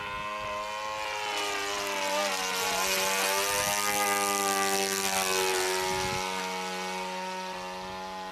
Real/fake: real